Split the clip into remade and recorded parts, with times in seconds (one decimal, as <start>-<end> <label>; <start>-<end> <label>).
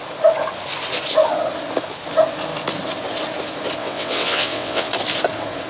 0.0-3.8 recorded; 3.8-4.9 remade; 4.9-5.7 recorded